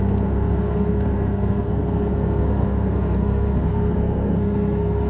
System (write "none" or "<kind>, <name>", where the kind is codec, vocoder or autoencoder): codec, SNAC